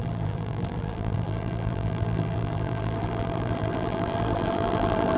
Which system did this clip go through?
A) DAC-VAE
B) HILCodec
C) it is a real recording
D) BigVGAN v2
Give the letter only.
D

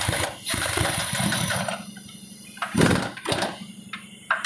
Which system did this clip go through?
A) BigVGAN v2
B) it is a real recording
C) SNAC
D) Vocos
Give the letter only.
A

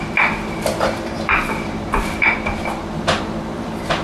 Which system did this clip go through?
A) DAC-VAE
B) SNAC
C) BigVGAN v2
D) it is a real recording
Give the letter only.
C